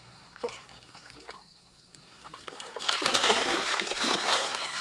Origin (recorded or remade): remade